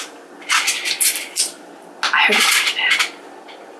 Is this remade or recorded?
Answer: recorded